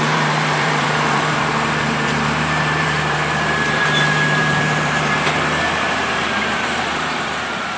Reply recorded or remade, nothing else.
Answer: remade